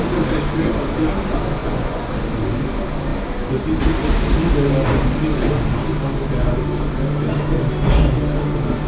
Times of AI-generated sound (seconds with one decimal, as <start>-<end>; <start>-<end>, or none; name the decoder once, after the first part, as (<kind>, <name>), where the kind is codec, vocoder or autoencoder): 1.6-2.1 (vocoder, Vocos)

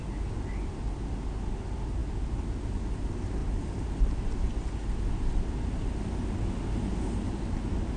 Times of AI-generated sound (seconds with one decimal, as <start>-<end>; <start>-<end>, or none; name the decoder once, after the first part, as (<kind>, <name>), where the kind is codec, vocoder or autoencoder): none

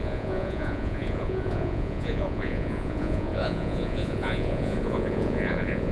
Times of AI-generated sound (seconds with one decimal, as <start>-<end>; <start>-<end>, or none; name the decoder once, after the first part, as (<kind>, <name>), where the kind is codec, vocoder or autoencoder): 0.0-5.9 (vocoder, Vocos)

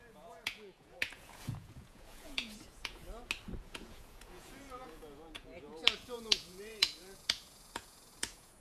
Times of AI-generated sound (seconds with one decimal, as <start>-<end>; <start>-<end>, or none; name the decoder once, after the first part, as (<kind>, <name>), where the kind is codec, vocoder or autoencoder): 0.0-3.0 (vocoder, Vocos); 3.6-8.6

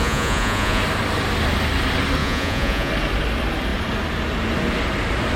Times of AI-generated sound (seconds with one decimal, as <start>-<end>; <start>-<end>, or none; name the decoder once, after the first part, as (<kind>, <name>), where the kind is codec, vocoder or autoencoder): 0.0-0.8 (vocoder, Vocos); 2.2-2.9

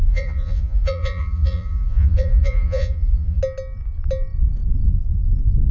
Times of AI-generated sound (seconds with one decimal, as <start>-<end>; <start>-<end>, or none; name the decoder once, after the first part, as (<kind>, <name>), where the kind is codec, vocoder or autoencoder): 0.0-3.4 (vocoder, Vocos)

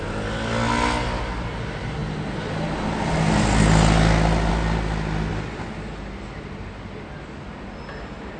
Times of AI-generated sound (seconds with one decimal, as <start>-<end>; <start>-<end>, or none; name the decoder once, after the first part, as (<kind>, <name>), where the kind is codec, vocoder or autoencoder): none